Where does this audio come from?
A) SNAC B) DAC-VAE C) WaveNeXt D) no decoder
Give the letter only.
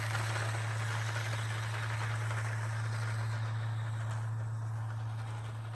D